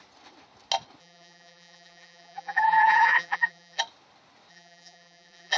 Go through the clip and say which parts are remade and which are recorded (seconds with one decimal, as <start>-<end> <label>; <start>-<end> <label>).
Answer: 0.0-1.0 recorded; 1.0-3.8 remade; 3.8-4.5 recorded; 4.5-5.6 remade